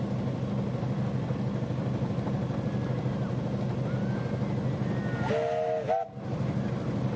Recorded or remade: recorded